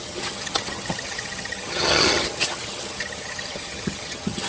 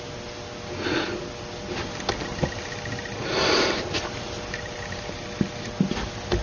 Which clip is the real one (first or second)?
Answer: second